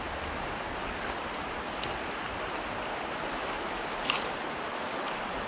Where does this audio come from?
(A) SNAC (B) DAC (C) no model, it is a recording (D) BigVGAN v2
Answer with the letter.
C